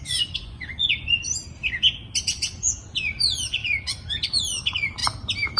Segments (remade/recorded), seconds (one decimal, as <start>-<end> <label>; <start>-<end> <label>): 0.0-1.4 remade; 1.4-2.2 recorded; 2.2-5.0 remade; 5.0-5.6 recorded